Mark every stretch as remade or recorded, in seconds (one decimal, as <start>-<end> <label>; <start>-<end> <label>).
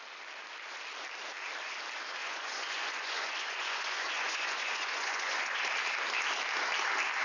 0.0-2.2 recorded; 2.2-5.6 remade; 5.6-7.2 recorded